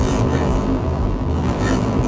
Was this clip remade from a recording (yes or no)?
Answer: yes